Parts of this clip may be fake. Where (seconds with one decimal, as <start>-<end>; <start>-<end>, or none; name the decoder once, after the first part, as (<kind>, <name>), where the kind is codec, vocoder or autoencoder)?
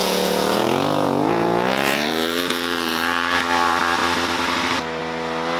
0.0-3.4 (vocoder, Vocos)